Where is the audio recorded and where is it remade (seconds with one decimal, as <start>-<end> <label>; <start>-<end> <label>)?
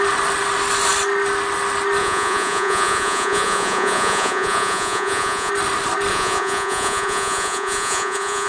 0.0-2.0 recorded; 2.0-5.5 remade; 5.5-6.1 recorded; 6.1-8.5 remade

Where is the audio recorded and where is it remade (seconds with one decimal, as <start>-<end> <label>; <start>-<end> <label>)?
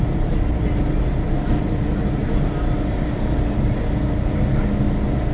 0.0-5.3 recorded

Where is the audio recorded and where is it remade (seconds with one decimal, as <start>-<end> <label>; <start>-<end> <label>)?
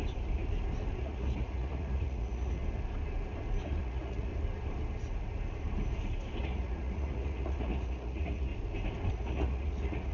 0.0-1.0 recorded; 1.0-2.6 remade; 2.6-3.8 recorded; 3.8-4.3 remade; 4.3-6.4 recorded; 6.4-8.5 remade; 8.5-9.1 recorded; 9.1-10.1 remade